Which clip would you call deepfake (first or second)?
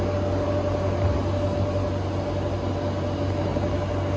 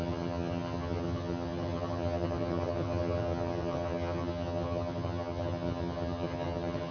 second